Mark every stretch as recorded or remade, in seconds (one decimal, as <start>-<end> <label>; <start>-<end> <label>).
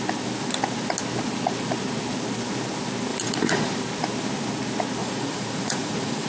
0.0-3.1 recorded; 3.1-3.7 remade; 3.7-5.0 recorded; 5.0-6.3 remade